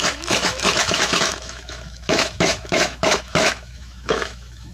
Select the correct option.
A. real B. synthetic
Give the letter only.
B